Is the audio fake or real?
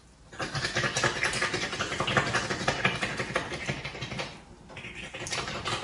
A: real